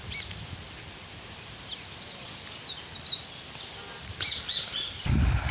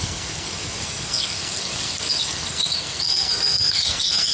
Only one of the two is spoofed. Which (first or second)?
second